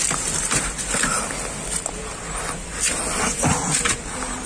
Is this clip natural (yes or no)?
yes